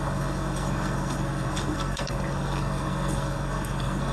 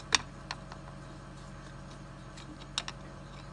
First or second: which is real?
second